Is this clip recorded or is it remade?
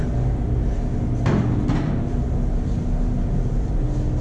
recorded